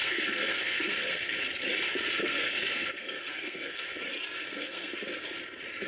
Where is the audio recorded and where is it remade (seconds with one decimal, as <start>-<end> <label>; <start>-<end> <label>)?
0.0-1.3 remade; 1.3-2.2 recorded; 2.2-4.0 remade; 4.0-4.4 recorded; 4.4-4.9 remade; 4.9-5.9 recorded